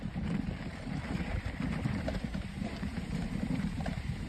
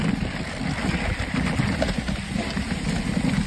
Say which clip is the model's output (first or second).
first